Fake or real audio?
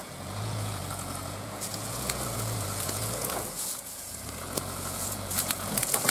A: fake